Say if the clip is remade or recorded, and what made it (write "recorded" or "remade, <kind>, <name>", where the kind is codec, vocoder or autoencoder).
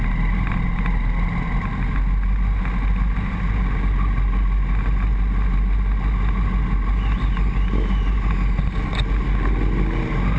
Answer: recorded